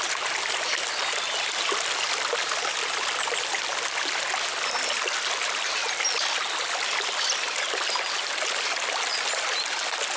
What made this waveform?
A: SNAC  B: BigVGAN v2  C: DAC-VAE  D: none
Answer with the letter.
D